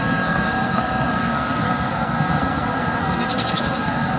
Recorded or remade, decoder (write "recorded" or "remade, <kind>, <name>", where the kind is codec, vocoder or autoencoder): remade, codec, SNAC